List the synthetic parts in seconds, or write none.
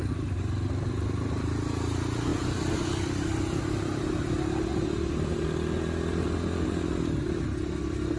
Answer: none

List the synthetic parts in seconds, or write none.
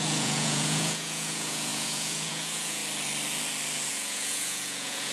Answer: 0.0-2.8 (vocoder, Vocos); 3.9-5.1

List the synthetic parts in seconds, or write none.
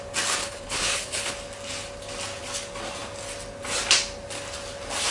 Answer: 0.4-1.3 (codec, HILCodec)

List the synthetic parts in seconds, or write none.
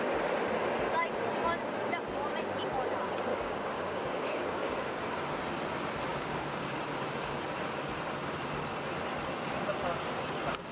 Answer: 3.3-4.9 (codec, DAC); 6.1-6.8